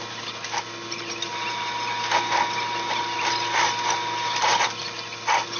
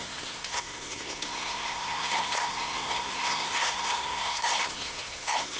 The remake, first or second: second